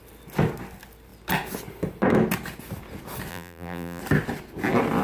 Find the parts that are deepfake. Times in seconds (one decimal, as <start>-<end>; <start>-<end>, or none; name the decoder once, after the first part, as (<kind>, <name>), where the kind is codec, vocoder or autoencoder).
3.3-4.0 (vocoder, BigVGAN v2)